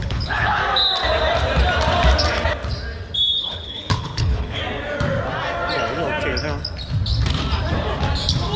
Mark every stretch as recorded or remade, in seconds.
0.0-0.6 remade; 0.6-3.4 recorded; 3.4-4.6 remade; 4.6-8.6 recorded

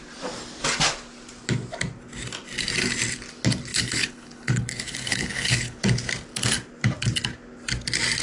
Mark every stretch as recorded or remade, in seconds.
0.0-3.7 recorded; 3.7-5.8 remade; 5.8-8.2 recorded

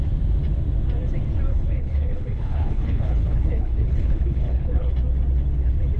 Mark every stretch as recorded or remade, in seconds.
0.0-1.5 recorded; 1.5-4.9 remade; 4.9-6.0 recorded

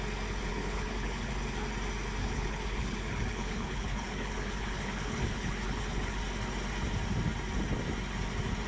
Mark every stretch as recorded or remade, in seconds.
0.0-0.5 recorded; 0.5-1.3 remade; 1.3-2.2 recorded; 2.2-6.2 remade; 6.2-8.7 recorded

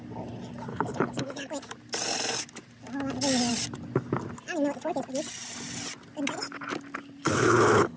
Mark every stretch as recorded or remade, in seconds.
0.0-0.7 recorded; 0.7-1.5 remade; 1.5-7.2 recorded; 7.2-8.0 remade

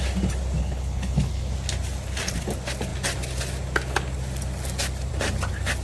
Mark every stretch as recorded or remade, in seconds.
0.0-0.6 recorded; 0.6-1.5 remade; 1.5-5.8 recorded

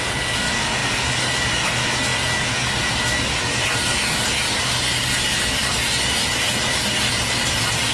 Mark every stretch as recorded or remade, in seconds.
0.0-7.9 recorded